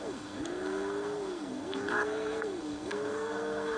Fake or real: fake